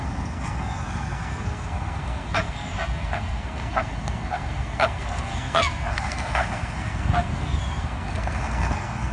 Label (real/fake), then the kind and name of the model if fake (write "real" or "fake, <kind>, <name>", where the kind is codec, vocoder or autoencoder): fake, codec, SNAC